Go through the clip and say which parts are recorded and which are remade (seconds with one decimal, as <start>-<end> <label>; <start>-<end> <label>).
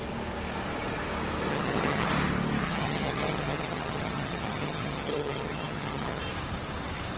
0.0-1.5 recorded; 1.5-2.1 remade; 2.1-2.6 recorded; 2.6-6.2 remade; 6.2-7.2 recorded